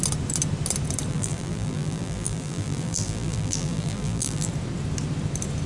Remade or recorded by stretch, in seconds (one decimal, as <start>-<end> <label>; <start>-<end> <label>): 0.0-1.1 recorded; 1.1-4.5 remade; 4.5-5.7 recorded